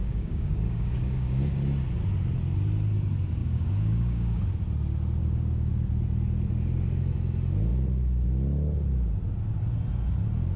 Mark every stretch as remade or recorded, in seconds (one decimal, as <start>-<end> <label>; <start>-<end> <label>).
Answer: 0.0-1.4 remade; 1.4-3.4 recorded; 3.4-4.4 remade; 4.4-5.2 recorded; 5.2-5.7 remade; 5.7-10.6 recorded